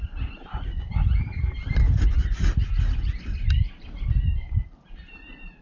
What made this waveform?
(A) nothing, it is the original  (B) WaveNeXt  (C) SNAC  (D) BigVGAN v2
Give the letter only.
A